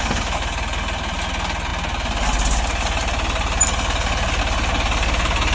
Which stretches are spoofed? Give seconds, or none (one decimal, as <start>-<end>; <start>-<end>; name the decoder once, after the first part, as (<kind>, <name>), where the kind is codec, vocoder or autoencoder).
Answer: none